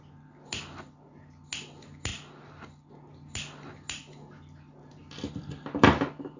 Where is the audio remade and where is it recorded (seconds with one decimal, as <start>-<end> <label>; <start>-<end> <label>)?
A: 0.0-5.0 recorded; 5.0-6.4 remade